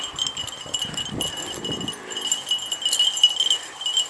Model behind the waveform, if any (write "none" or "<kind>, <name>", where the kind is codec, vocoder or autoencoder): none